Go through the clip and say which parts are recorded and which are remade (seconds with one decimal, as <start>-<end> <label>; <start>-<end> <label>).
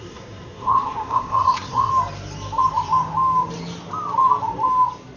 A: 0.0-1.9 remade; 1.9-5.2 recorded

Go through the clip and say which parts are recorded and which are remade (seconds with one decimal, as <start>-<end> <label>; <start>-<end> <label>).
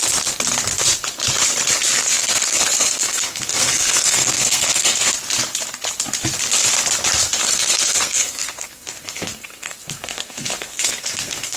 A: 0.0-2.0 recorded; 2.0-5.1 remade; 5.1-7.4 recorded; 7.4-11.6 remade